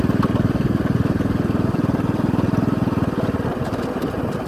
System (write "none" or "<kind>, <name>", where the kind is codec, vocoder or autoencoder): none